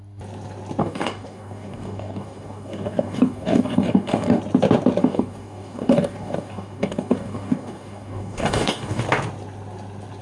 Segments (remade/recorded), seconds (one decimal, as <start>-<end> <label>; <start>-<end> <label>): 0.0-0.8 recorded; 0.8-4.4 remade; 4.4-5.0 recorded; 5.0-9.0 remade; 9.0-10.2 recorded